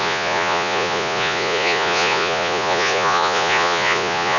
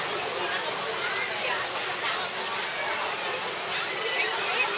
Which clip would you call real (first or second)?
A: second